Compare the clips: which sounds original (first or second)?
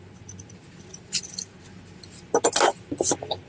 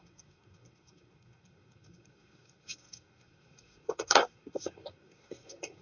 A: first